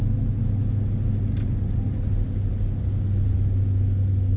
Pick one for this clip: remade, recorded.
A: recorded